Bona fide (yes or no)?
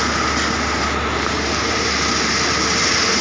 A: yes